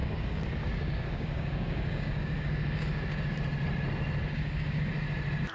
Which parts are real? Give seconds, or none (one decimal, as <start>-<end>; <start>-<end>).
3.3-4.2; 4.9-5.5